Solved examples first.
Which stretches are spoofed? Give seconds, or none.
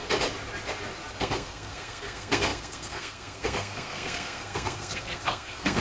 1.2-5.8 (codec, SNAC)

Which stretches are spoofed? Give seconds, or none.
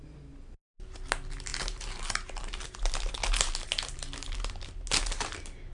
none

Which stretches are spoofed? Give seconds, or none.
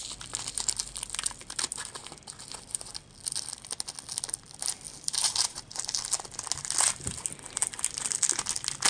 4.9-5.8 (vocoder, BigVGAN v2)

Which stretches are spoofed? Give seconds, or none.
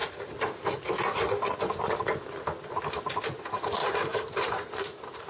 0.0-1.5 (vocoder, BigVGAN v2); 3.8-5.3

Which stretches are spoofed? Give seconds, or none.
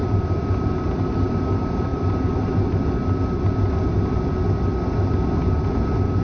none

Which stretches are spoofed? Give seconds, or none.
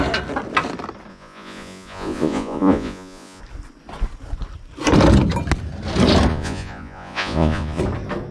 1.1-3.4 (vocoder, Vocos); 6.3-7.8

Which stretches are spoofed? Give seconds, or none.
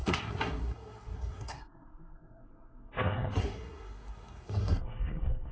0.0-5.5 (codec, SNAC)